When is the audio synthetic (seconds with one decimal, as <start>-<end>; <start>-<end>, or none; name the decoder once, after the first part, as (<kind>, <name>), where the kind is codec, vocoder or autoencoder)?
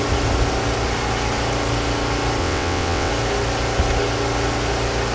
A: 2.4-3.1 (vocoder, WaveNeXt)